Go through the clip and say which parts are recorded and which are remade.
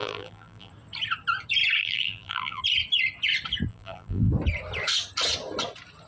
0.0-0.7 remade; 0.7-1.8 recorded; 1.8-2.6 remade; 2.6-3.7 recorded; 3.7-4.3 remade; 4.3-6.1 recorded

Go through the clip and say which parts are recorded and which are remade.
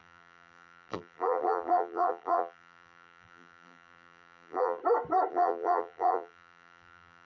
0.0-4.8 remade; 4.8-5.3 recorded; 5.3-7.2 remade